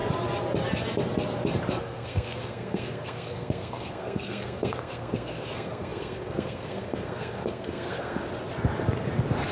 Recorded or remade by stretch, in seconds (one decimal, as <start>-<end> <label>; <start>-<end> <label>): 0.0-1.8 recorded; 1.8-8.2 remade; 8.2-9.5 recorded